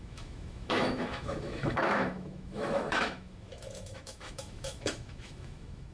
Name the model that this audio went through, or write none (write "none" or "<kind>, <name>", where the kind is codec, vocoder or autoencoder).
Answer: autoencoder, DAC-VAE